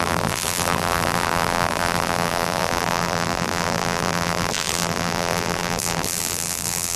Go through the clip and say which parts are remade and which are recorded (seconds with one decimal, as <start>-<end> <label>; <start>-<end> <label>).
0.0-7.0 remade